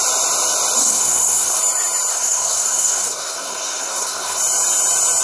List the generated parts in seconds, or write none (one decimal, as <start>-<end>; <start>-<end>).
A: 0.8-1.6; 2.1-4.4

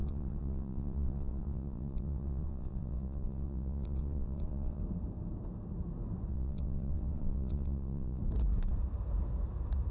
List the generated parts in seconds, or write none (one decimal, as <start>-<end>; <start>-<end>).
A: 0.0-4.8; 6.3-8.2